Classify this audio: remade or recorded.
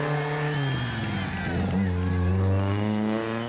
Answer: recorded